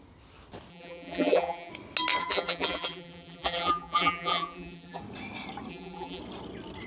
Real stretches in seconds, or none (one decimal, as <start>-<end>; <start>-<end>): 0.0-0.7; 1.7-2.2; 5.0-5.7; 6.2-6.9